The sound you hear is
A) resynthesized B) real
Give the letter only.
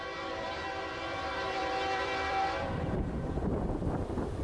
A